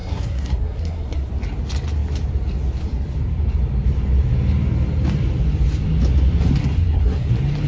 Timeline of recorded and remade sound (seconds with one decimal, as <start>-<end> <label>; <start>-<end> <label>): 0.0-1.3 remade; 1.3-6.6 recorded; 6.6-7.3 remade; 7.3-7.7 recorded